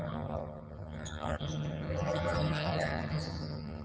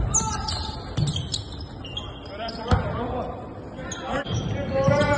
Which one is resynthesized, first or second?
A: first